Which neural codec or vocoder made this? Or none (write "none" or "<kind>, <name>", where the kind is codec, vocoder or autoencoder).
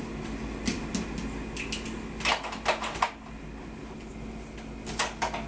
none